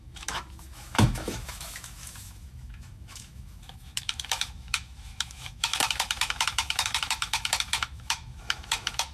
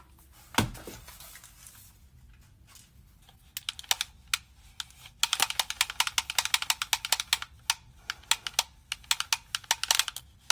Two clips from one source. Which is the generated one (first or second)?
first